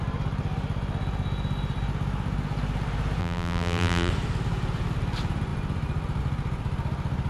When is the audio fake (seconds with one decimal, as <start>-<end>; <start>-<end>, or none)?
3.2-4.1